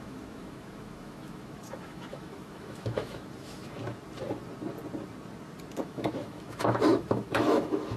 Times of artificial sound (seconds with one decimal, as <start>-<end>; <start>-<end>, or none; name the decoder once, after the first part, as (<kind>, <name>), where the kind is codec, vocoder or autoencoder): 0.0-3.8 (autoencoder, DAC-VAE); 5.8-8.0